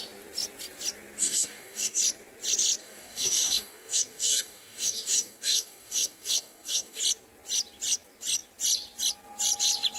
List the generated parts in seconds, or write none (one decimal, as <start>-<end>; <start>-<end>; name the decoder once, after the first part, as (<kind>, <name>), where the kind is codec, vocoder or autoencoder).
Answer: 1.2-2.0 (codec, DAC); 2.8-7.0